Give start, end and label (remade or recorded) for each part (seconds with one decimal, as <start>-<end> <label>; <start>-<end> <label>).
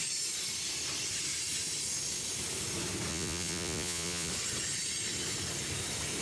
0.0-3.1 recorded; 3.1-4.3 remade; 4.3-6.2 recorded